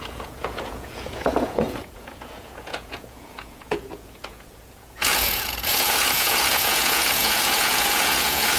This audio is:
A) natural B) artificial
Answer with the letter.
B